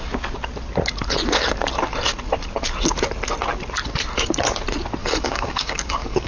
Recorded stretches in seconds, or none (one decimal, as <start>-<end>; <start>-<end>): 0.0-5.0